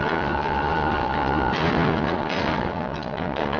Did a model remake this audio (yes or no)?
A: yes